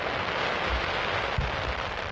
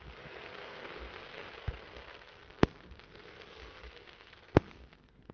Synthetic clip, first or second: second